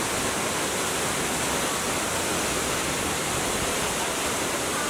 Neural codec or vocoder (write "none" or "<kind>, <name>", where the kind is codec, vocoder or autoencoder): none